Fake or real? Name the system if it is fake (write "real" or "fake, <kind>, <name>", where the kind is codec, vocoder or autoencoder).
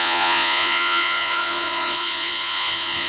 fake, vocoder, Vocos